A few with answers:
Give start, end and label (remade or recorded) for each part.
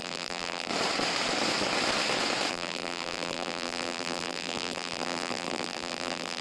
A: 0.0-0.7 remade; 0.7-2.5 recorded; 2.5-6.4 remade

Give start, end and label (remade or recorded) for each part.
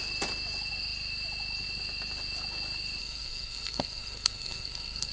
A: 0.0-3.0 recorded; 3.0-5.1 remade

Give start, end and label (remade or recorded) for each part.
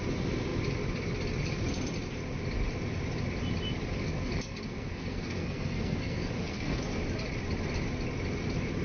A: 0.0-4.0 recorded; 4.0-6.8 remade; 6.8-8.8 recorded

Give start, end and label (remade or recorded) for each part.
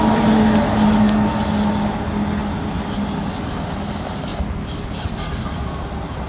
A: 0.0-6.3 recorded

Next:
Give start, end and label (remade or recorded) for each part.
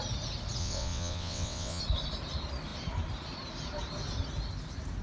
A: 0.0-0.6 recorded; 0.6-1.8 remade; 1.8-5.0 recorded